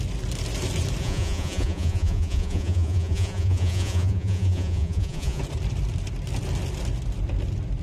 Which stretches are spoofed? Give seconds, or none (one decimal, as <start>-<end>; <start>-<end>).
1.0-5.4